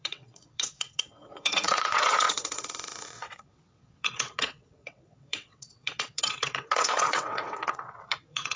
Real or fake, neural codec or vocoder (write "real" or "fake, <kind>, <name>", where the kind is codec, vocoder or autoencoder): fake, vocoder, WaveNeXt